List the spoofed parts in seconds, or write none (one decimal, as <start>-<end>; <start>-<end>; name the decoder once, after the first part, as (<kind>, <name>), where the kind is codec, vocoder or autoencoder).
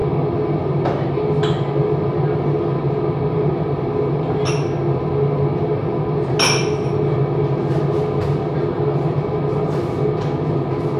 none